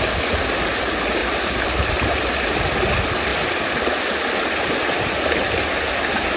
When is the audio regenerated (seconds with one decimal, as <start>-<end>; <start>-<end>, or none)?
1.2-1.9